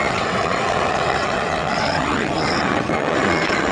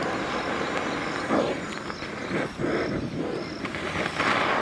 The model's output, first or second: first